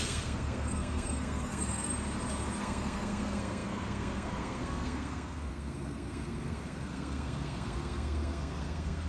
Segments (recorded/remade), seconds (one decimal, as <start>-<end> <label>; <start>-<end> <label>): 0.0-1.9 remade; 1.9-2.6 recorded; 2.6-9.1 remade